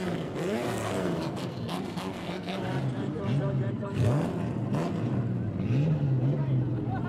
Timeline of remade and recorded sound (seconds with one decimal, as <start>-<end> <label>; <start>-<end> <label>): 0.0-2.7 remade; 2.7-3.7 recorded; 3.7-4.3 remade; 4.3-7.1 recorded